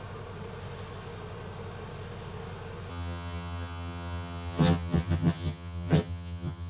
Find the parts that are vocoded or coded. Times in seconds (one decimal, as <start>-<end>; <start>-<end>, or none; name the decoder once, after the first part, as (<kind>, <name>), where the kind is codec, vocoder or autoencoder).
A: 2.9-6.7 (vocoder, HiFi-GAN)

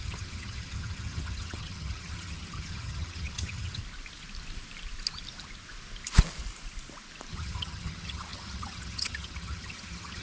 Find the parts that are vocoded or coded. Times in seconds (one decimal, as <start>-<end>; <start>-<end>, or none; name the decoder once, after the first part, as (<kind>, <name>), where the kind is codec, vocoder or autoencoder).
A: 0.0-3.8 (vocoder, HiFi-GAN); 7.3-10.2

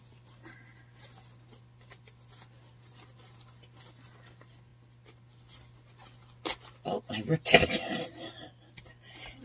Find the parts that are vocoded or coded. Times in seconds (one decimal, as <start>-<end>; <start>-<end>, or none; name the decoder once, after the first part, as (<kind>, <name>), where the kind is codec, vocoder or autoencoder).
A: none

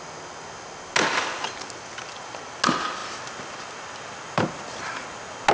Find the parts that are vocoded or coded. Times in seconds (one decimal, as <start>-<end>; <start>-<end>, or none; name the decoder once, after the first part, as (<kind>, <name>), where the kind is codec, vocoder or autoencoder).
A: none

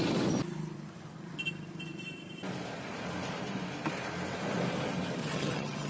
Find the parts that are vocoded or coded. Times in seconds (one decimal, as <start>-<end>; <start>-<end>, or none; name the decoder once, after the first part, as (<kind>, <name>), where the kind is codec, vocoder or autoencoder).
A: 5.2-5.9 (vocoder, HiFi-GAN)